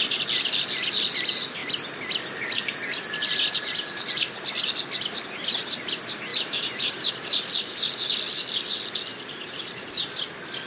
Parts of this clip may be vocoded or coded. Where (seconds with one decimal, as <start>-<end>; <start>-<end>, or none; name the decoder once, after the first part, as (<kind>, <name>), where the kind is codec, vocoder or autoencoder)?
6.3-7.1 (vocoder, BigVGAN v2); 9.1-9.9